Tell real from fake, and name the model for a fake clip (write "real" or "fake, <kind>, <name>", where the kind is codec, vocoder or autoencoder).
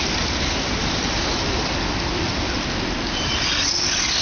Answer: real